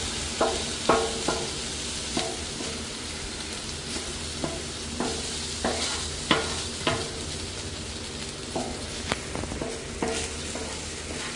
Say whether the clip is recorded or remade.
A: recorded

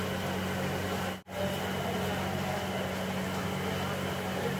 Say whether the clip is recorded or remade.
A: recorded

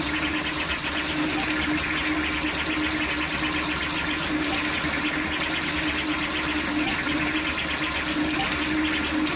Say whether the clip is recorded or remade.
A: recorded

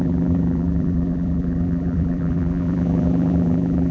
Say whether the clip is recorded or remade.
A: remade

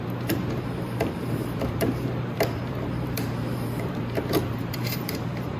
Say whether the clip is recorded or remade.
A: remade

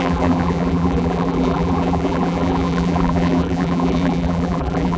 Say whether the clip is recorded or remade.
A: remade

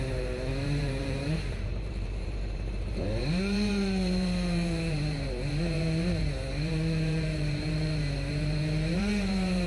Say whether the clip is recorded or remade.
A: remade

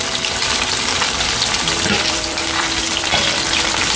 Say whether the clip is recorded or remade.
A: remade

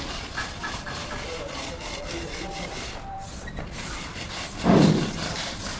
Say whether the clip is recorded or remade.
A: remade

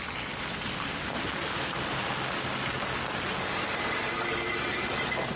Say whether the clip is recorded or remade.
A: recorded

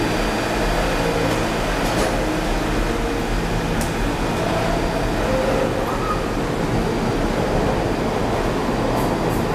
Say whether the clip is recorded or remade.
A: recorded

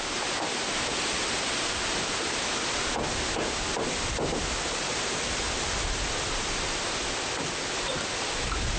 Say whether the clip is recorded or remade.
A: remade